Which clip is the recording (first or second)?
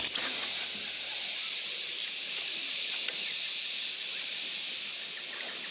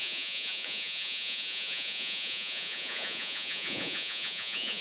first